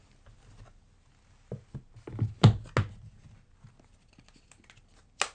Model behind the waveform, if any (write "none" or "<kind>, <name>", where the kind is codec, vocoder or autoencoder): none